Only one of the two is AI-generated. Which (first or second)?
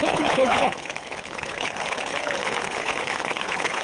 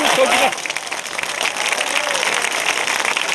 first